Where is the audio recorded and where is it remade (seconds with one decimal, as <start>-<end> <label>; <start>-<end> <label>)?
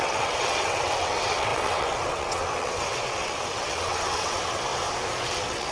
0.0-4.7 remade; 4.7-5.2 recorded; 5.2-5.7 remade